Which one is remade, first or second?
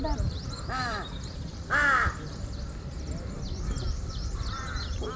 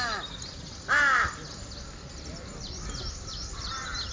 first